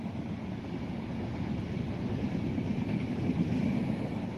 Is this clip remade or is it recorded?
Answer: recorded